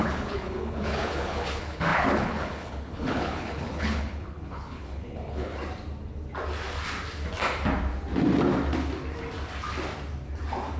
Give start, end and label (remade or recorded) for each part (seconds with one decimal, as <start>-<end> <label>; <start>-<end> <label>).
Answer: 0.0-5.5 remade; 5.5-10.8 recorded